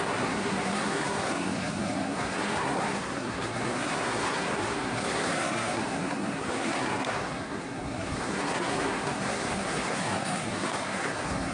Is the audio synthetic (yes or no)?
yes